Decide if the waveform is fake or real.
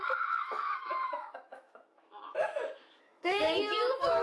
fake